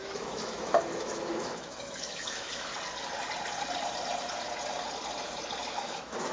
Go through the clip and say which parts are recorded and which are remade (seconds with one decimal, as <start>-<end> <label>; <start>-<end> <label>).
0.0-2.7 remade; 2.7-5.6 recorded; 5.6-6.3 remade